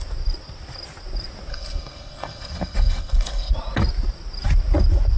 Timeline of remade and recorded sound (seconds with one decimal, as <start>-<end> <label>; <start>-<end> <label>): 0.0-1.5 recorded; 1.5-3.5 remade; 3.5-5.2 recorded